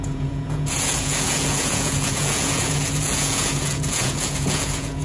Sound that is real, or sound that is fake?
fake